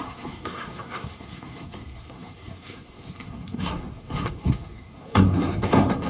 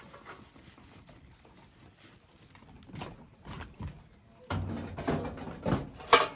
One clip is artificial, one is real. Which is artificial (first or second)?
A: first